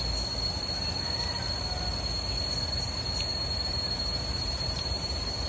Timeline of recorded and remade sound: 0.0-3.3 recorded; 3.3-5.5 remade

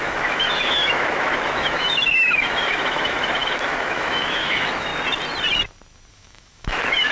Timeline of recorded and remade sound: 0.0-4.9 remade; 4.9-6.1 recorded; 6.1-7.1 remade

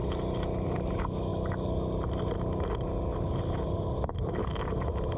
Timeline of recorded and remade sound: 0.0-5.2 recorded

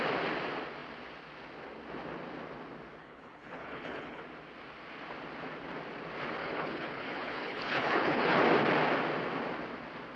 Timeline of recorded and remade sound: 0.0-3.0 recorded; 3.0-4.2 remade; 4.2-6.4 recorded; 6.4-8.4 remade; 8.4-10.2 recorded

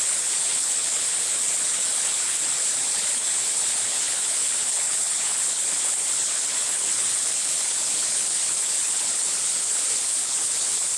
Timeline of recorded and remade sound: 0.0-11.0 remade